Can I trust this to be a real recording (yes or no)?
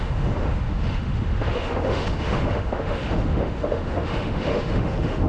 no